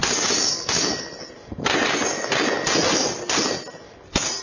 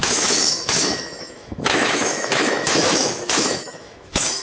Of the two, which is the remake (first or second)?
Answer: second